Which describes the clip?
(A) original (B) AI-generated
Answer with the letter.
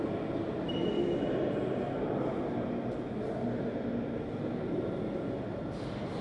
A